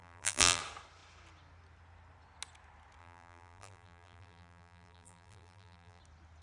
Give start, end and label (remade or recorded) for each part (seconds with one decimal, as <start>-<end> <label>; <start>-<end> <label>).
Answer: 0.0-0.6 remade; 0.6-3.0 recorded; 3.0-6.0 remade; 6.0-6.4 recorded